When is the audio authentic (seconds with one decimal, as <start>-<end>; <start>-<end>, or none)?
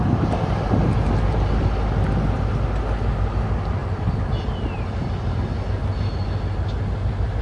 0.0-7.4